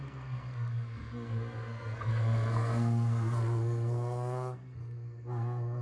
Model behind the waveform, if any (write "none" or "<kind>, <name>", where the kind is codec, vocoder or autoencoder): codec, SNAC